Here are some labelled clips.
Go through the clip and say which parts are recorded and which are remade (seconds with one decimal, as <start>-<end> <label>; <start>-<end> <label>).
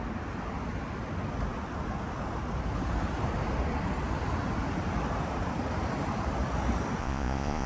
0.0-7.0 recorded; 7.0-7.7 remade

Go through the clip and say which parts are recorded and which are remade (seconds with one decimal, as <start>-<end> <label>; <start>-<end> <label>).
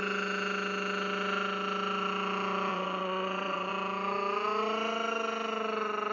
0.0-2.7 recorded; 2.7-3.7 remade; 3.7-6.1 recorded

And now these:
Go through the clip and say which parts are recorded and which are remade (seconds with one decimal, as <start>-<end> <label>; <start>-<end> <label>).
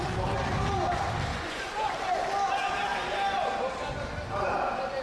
0.0-1.3 recorded; 1.3-1.9 remade; 1.9-5.0 recorded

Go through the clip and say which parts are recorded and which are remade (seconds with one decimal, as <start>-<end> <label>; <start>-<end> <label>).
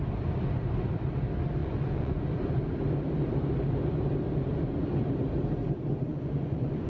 0.0-1.6 recorded; 1.6-2.3 remade; 2.3-6.1 recorded; 6.1-6.9 remade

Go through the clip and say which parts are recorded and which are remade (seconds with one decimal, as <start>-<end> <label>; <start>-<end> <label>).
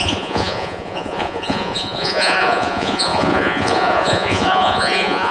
0.0-5.3 remade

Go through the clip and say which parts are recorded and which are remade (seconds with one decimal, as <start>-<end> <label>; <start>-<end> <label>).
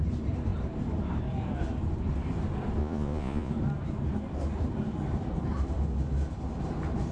0.0-2.8 recorded; 2.8-3.5 remade; 3.5-7.1 recorded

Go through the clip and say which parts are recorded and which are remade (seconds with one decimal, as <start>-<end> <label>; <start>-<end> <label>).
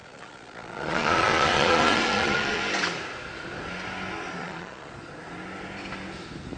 0.0-2.6 remade; 2.6-4.4 recorded; 4.4-4.9 remade; 4.9-6.6 recorded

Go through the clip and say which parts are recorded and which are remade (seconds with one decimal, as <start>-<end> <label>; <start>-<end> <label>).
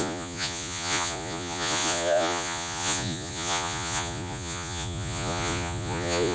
0.0-6.3 remade